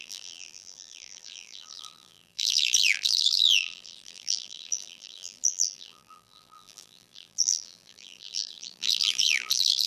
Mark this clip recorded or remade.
remade